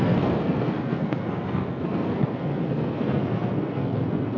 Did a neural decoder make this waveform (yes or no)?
yes